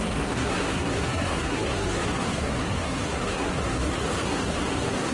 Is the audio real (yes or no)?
no